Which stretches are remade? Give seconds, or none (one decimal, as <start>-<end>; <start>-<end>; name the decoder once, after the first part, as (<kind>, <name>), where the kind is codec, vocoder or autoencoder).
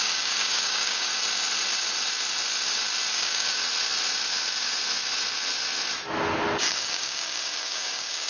0.0-1.1 (codec, DAC); 3.1-3.6; 6.6-8.3